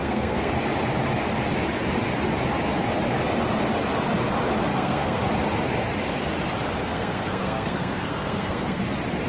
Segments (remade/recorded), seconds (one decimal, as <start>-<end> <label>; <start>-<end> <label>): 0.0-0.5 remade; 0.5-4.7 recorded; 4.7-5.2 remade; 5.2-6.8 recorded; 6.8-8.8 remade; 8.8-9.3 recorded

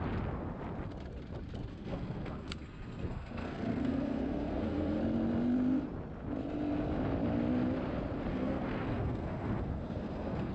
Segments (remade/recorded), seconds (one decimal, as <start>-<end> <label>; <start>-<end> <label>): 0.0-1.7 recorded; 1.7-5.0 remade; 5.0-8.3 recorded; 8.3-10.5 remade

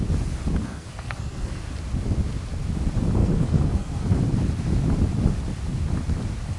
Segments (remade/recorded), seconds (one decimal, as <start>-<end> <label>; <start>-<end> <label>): 0.0-0.6 recorded; 0.6-1.6 remade; 1.6-3.2 recorded; 3.2-4.2 remade; 4.2-6.6 recorded

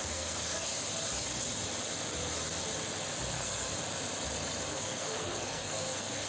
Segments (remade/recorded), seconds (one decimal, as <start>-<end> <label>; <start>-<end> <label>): 0.0-0.7 remade; 0.7-3.3 recorded; 3.3-3.7 remade; 3.7-4.7 recorded; 4.7-6.3 remade

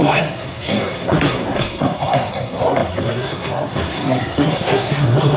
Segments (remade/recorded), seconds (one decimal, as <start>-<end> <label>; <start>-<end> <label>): 0.0-5.4 remade